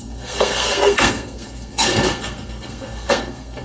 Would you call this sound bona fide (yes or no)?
no